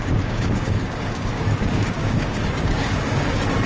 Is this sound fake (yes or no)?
yes